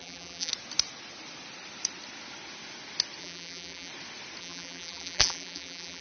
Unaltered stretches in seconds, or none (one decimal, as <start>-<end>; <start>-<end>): 0.5-3.2; 3.9-4.4